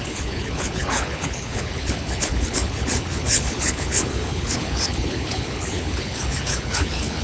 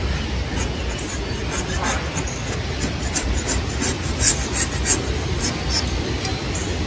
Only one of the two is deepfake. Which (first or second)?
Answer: first